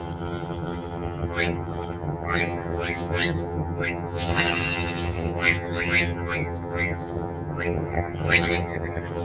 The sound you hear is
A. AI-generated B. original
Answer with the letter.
A